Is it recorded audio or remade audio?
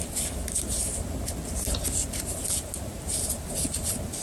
recorded